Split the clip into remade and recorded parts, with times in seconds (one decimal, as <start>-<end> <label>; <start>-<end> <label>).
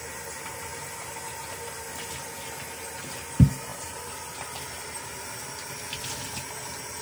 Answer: 0.0-3.7 recorded; 3.7-5.2 remade; 5.2-7.0 recorded